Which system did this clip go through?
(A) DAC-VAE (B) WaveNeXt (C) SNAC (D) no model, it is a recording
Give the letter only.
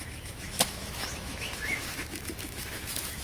A